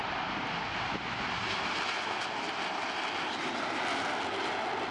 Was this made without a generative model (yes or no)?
yes